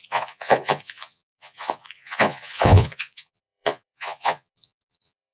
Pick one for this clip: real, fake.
fake